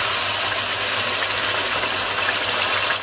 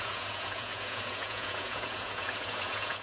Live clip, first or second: first